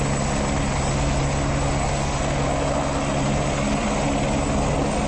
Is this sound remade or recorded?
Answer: recorded